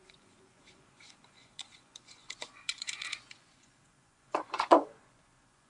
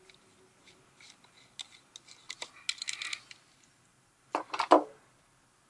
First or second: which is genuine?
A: second